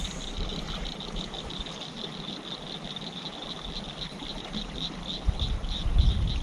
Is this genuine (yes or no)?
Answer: yes